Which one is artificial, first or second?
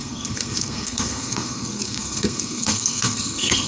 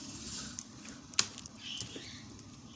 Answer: first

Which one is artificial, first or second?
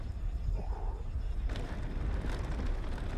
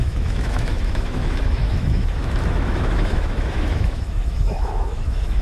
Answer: second